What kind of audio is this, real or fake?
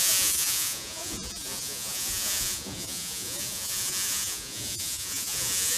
fake